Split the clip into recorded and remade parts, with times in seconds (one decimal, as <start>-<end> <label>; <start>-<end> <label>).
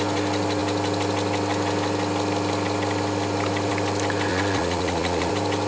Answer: 0.0-4.3 recorded; 4.3-5.3 remade; 5.3-5.7 recorded